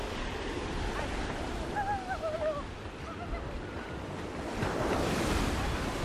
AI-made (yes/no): no